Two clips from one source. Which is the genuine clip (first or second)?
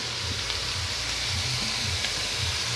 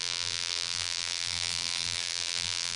first